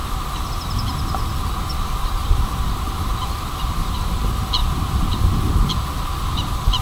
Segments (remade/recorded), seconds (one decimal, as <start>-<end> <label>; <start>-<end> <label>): 0.0-1.7 recorded; 1.7-4.1 remade; 4.1-4.6 recorded; 4.6-5.5 remade; 5.5-6.8 recorded